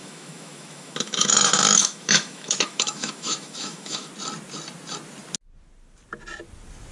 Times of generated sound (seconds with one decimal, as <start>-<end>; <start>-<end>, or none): 0.0-4.1